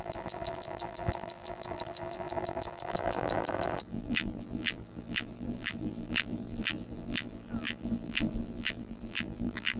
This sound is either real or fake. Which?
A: fake